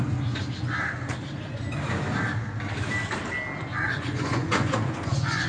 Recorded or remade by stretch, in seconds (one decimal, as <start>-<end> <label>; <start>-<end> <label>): 0.0-3.7 recorded; 3.7-5.5 remade